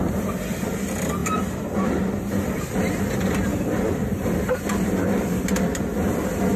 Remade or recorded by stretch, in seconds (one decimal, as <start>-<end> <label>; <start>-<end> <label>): 0.0-6.6 recorded